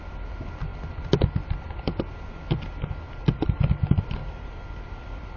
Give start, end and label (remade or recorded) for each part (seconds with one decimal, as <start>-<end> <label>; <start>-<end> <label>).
0.0-5.4 recorded